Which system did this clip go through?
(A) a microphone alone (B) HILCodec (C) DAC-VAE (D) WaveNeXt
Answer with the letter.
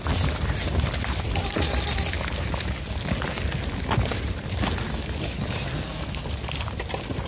A